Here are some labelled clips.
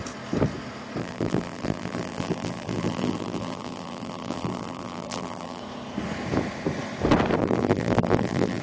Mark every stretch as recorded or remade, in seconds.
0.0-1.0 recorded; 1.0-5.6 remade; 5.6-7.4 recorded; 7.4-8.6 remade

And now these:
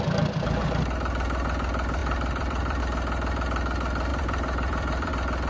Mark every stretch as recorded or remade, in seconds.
0.0-2.0 recorded; 2.0-2.8 remade; 2.8-4.1 recorded; 4.1-5.1 remade; 5.1-5.5 recorded

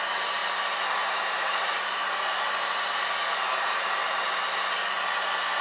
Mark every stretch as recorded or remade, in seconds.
0.0-4.0 remade; 4.0-5.6 recorded

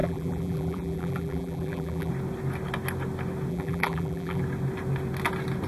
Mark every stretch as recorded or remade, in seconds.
0.0-2.1 remade; 2.1-3.5 recorded; 3.5-4.4 remade; 4.4-5.7 recorded

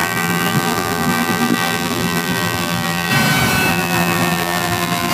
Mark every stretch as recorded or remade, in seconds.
0.0-3.1 remade; 3.1-3.7 recorded; 3.7-5.1 remade

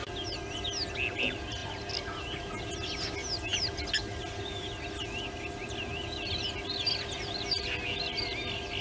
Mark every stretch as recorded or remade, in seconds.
0.0-8.8 recorded

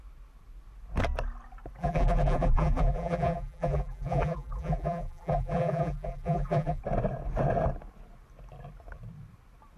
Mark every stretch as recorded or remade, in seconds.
0.0-1.8 recorded; 1.8-6.8 remade; 6.8-9.8 recorded

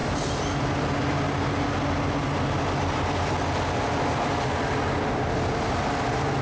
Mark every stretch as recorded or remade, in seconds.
0.0-6.4 recorded